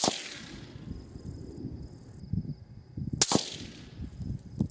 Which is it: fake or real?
real